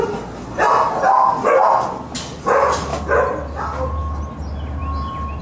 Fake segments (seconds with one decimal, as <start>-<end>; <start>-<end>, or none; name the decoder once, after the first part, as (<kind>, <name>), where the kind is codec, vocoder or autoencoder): none